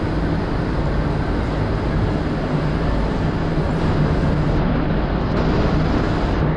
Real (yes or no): yes